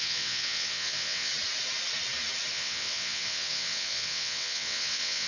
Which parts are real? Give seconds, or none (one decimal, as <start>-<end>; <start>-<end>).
1.3-2.5